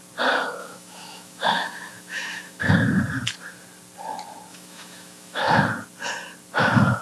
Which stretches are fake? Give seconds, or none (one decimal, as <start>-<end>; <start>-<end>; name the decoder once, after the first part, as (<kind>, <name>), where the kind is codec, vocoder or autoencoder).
0.6-2.7 (autoencoder, DAC-VAE); 4.5-5.4